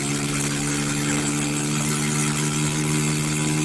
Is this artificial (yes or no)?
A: no